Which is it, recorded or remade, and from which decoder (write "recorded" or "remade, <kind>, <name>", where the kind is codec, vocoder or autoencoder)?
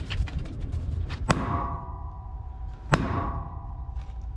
remade, vocoder, BigVGAN v2